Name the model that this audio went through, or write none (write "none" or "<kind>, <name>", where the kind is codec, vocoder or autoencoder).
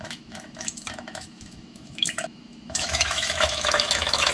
autoencoder, DAC-VAE